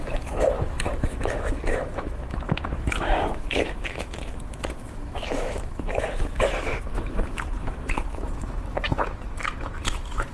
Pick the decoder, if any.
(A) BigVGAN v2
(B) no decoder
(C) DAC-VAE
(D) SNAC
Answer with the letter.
C